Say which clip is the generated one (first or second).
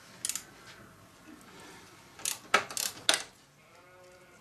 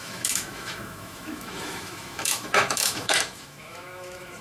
second